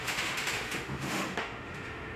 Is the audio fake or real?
fake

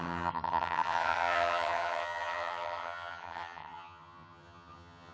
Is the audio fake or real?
fake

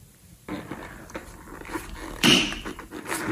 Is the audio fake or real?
fake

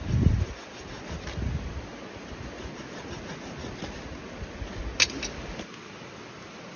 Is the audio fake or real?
real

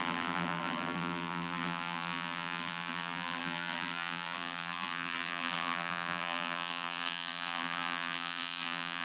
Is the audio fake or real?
fake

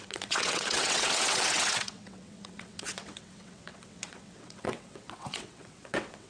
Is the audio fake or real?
fake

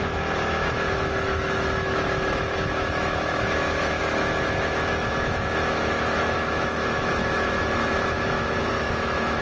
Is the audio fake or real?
fake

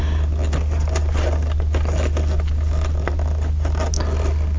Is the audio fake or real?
real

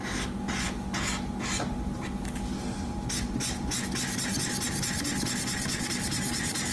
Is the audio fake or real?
real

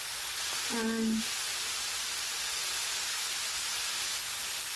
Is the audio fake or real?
real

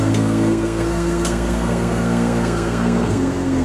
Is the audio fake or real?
fake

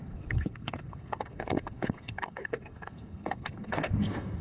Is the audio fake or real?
fake